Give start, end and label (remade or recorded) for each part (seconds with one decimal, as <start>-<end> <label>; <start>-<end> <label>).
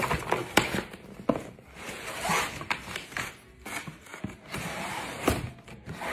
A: 0.0-0.4 recorded; 0.4-3.3 remade; 3.3-6.1 recorded